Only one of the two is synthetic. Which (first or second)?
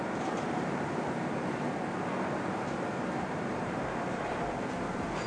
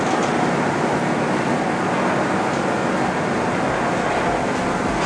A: first